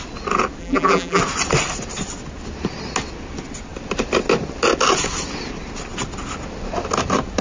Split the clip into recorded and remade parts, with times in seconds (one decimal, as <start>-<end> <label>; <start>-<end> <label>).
0.0-0.6 recorded; 0.6-1.2 remade; 1.2-7.4 recorded